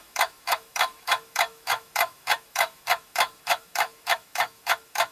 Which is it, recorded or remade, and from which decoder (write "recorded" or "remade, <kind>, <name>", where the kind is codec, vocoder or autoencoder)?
remade, autoencoder, DAC-VAE